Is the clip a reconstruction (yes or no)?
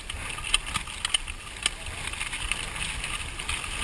no